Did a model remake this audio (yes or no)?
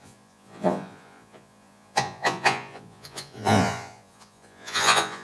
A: yes